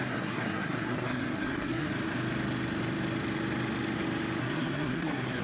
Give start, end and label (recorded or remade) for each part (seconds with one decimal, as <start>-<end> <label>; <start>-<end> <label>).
0.0-1.9 remade; 1.9-4.4 recorded; 4.4-5.4 remade